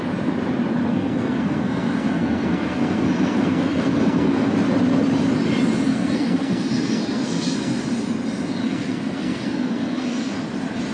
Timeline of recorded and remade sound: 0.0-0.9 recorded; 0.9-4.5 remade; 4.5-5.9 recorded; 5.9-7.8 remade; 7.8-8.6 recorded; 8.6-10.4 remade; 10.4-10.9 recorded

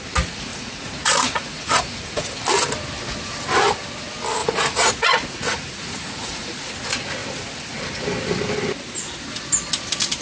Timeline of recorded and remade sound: 0.0-0.5 recorded; 0.5-2.4 remade; 2.4-4.4 recorded; 4.4-6.7 remade; 6.7-10.2 recorded

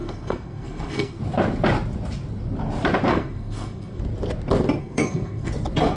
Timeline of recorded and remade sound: 0.0-1.2 remade; 1.2-3.1 recorded; 3.1-4.0 remade; 4.0-4.8 recorded; 4.8-5.5 remade; 5.5-6.0 recorded

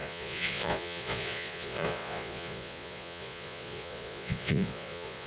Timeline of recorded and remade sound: 0.0-5.3 remade

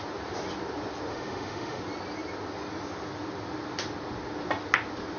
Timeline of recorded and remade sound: 0.0-1.1 recorded; 1.1-1.8 remade; 1.8-5.2 recorded